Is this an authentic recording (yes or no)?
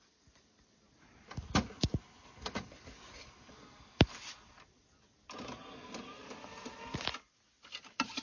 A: yes